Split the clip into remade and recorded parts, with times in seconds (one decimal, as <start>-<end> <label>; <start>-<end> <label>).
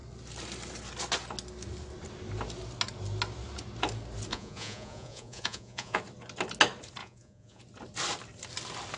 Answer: 0.0-4.3 recorded; 4.3-6.0 remade; 6.0-7.0 recorded; 7.0-7.6 remade; 7.6-9.0 recorded